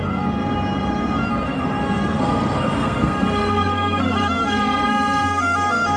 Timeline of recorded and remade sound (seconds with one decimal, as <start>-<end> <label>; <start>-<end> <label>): 0.0-0.4 remade; 0.4-1.3 recorded; 1.3-6.0 remade

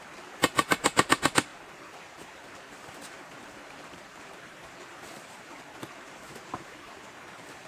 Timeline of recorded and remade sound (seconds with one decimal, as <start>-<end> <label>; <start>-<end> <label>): 0.0-7.7 remade

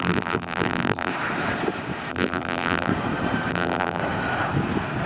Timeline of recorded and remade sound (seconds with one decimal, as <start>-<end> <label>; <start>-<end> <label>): 0.0-1.1 remade; 1.1-2.1 recorded; 2.1-2.9 remade; 2.9-3.5 recorded; 3.5-4.0 remade; 4.0-5.1 recorded

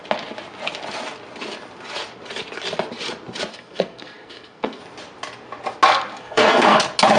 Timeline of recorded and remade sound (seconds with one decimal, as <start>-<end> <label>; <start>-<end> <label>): 0.0-3.5 recorded; 3.5-4.8 remade; 4.8-6.1 recorded; 6.1-6.8 remade; 6.8-7.2 recorded

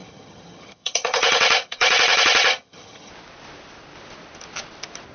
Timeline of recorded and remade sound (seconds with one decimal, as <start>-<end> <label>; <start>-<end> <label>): 0.0-3.1 remade; 3.1-5.1 recorded

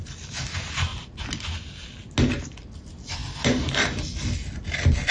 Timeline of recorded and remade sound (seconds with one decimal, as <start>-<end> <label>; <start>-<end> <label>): 0.0-5.1 recorded

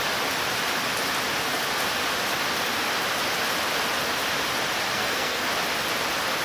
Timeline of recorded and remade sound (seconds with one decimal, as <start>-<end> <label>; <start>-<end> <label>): 0.0-4.9 recorded; 4.9-5.5 remade; 5.5-6.4 recorded

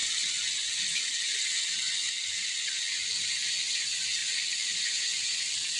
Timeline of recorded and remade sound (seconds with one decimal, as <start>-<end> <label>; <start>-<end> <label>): 0.0-5.8 recorded